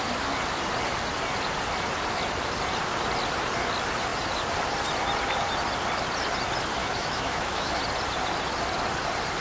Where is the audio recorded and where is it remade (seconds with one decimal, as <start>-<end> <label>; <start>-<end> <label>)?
0.0-6.8 recorded; 6.8-7.8 remade; 7.8-9.4 recorded